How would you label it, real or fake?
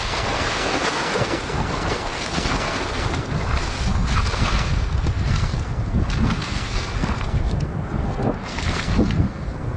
fake